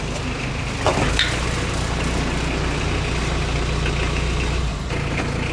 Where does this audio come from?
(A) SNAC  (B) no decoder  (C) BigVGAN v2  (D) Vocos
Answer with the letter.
B